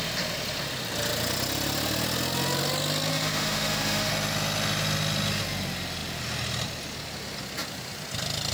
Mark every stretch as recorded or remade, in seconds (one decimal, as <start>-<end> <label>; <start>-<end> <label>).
0.0-3.1 recorded; 3.1-4.1 remade; 4.1-8.5 recorded